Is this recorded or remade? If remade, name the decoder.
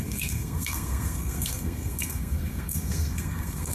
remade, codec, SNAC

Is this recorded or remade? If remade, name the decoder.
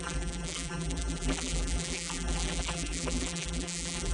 remade, vocoder, BigVGAN v2